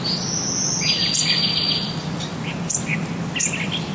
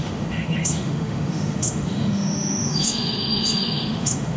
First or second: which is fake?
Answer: second